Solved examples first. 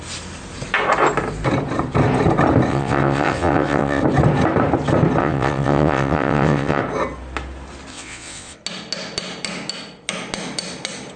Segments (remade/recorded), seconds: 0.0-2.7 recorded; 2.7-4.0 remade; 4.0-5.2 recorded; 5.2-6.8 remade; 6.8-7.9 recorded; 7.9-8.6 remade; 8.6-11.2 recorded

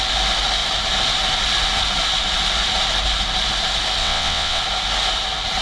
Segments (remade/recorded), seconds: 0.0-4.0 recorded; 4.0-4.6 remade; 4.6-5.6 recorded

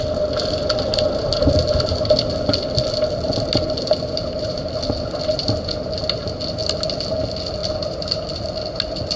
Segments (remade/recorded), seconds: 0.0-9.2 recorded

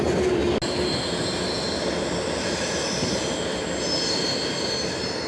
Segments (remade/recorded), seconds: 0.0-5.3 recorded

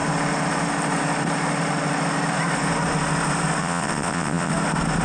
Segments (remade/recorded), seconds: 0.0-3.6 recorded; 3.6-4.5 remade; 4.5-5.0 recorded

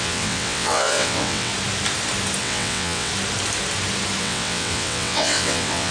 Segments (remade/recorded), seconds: 0.0-1.5 remade; 1.5-2.4 recorded; 2.4-3.1 remade; 3.1-4.2 recorded; 4.2-5.9 remade

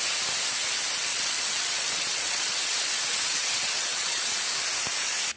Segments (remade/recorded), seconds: 0.0-1.1 recorded; 1.1-4.3 remade; 4.3-5.4 recorded

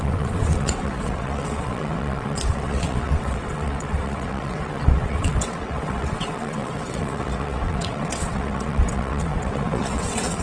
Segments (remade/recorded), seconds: 0.0-10.4 remade